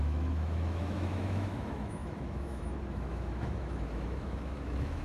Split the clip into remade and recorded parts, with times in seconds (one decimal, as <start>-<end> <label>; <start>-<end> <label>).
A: 0.0-5.0 remade